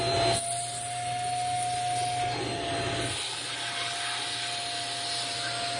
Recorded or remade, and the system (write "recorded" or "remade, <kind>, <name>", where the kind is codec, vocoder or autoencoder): recorded